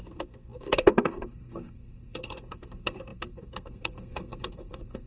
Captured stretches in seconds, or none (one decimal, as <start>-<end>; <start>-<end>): none